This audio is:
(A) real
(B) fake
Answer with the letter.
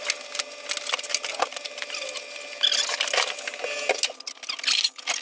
A